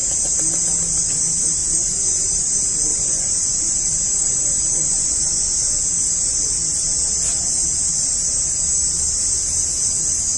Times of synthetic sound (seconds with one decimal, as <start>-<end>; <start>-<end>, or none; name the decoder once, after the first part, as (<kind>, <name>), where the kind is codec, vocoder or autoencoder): 1.6-2.4 (vocoder, Vocos); 2.9-5.8